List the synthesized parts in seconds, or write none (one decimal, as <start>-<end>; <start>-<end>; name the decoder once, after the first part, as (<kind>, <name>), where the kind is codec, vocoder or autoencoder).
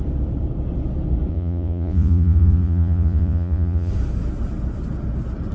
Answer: 1.3-3.9 (vocoder, Vocos)